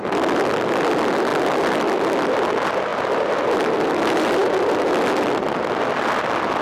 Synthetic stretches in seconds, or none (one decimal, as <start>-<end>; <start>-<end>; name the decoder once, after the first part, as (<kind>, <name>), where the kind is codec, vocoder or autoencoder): none